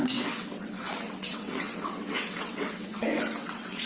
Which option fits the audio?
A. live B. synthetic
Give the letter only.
B